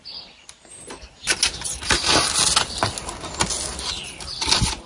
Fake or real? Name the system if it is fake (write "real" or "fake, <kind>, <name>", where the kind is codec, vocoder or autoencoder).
real